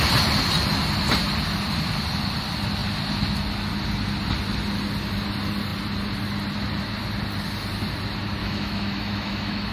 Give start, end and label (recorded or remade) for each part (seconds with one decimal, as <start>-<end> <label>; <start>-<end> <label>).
0.0-8.4 recorded; 8.4-9.7 remade